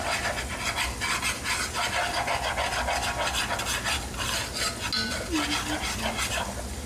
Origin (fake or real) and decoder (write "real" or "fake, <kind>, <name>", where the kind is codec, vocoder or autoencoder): real